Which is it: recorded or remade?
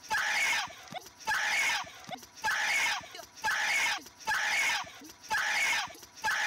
recorded